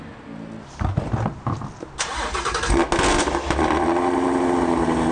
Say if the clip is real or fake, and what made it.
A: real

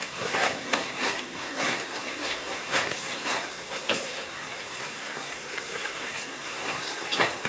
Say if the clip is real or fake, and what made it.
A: fake, codec, SNAC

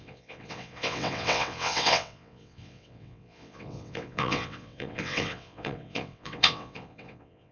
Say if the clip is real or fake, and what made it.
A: fake, vocoder, WaveNeXt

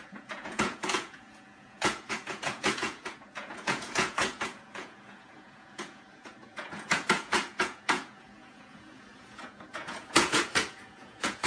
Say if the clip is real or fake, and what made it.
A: fake, vocoder, Vocos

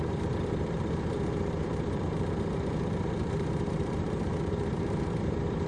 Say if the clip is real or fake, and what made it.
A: fake, vocoder, BigVGAN v2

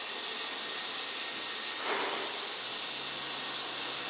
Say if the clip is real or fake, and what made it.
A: real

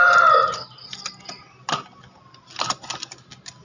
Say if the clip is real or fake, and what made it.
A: real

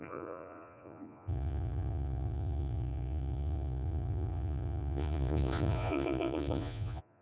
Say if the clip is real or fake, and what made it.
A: fake, vocoder, Vocos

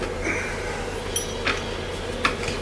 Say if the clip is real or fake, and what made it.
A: real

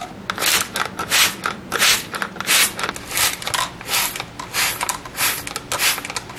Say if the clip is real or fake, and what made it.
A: real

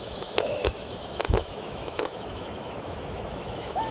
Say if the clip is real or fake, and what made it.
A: fake, autoencoder, DAC-VAE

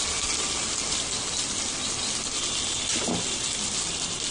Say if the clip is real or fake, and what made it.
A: real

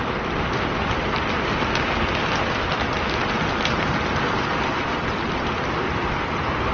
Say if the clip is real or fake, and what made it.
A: real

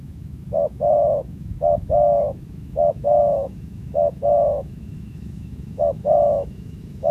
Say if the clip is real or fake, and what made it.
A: fake, autoencoder, DAC-VAE